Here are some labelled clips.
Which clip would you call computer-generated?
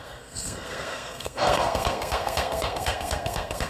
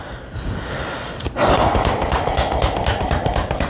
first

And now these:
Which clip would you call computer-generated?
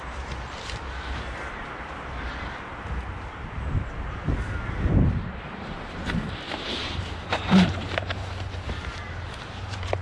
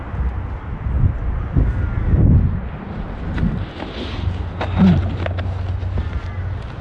first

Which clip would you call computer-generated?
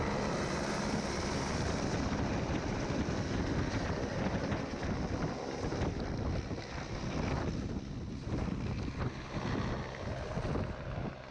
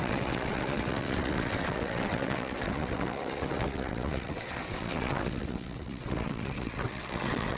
second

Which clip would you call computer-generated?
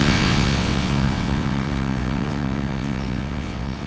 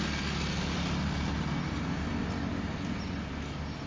first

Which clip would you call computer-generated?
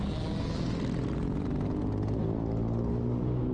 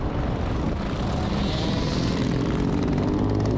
second